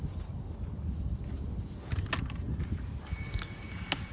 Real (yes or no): yes